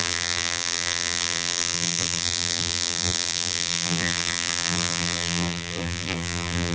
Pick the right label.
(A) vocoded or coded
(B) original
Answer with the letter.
A